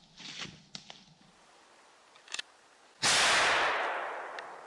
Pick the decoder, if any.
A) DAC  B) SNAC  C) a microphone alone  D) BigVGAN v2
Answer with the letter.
C